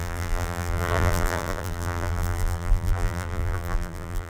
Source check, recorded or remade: remade